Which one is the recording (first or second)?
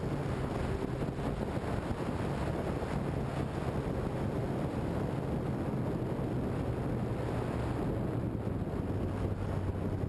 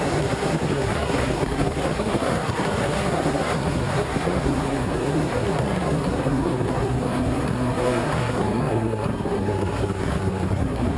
first